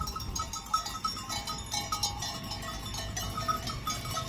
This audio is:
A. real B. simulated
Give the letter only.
A